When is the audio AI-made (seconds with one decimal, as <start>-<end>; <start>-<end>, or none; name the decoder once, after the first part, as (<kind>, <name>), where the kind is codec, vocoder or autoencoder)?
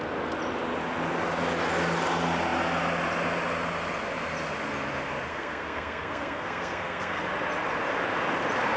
5.3-7.2 (codec, SNAC)